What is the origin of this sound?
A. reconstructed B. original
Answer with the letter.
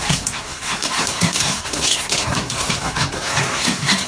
A